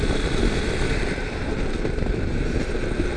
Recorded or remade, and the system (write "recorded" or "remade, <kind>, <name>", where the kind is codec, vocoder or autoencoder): recorded